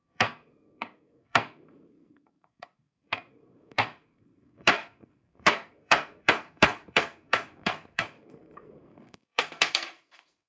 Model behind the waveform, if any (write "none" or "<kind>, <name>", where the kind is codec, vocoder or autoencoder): codec, SNAC